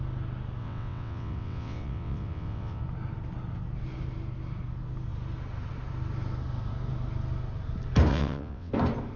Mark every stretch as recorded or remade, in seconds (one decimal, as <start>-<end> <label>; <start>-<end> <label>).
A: 0.0-0.6 recorded; 0.6-2.8 remade; 2.8-8.1 recorded; 8.1-8.7 remade; 8.7-9.2 recorded